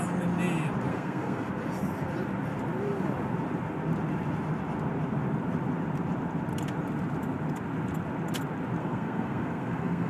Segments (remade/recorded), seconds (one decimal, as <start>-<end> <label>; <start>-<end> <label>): 0.0-0.9 recorded; 0.9-1.5 remade; 1.5-8.8 recorded; 8.8-10.1 remade